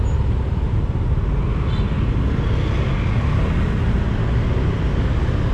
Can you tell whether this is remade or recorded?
recorded